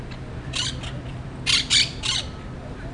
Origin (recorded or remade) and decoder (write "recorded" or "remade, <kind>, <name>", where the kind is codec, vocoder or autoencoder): recorded